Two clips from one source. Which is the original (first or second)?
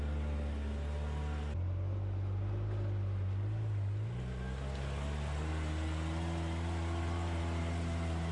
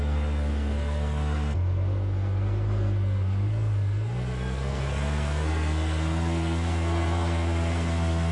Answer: first